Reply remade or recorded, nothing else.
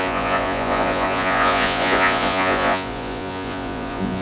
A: remade